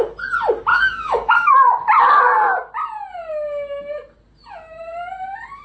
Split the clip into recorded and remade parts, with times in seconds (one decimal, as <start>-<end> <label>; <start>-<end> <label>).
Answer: 0.0-0.7 recorded; 0.7-1.5 remade; 1.5-5.6 recorded